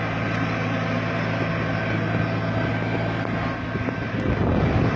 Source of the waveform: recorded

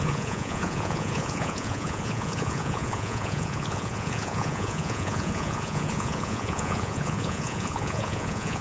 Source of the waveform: remade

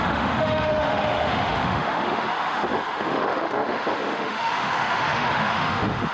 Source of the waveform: remade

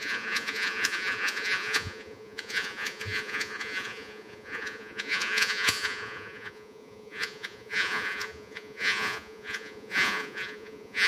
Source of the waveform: remade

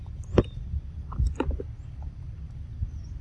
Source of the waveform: recorded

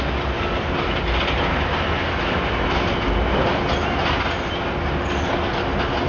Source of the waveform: recorded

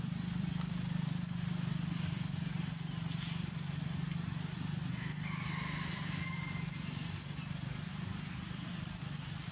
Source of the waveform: recorded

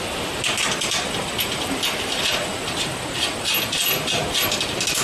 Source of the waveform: recorded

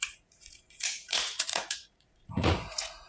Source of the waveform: remade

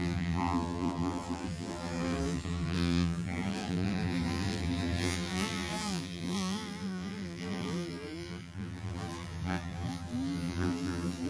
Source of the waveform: remade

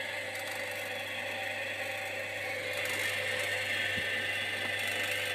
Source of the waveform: recorded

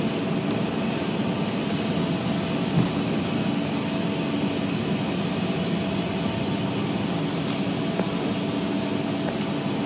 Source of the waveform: recorded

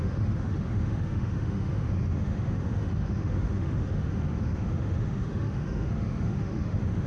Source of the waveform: remade